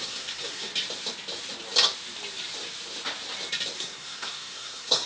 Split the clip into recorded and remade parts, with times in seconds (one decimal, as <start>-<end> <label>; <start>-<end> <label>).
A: 0.0-0.7 remade; 0.7-3.8 recorded; 3.8-5.1 remade